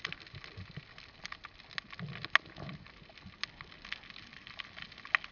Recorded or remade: recorded